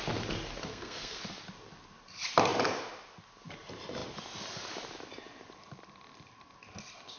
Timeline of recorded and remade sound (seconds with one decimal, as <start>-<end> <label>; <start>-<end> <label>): 0.0-0.7 recorded; 0.7-1.2 remade; 1.2-7.2 recorded